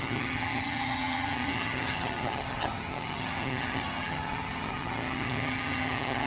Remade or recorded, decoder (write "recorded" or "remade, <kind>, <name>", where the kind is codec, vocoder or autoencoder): remade, vocoder, HiFi-GAN